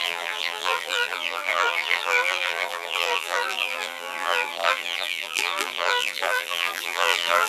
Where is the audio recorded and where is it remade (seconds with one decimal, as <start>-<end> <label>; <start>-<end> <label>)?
0.0-7.5 remade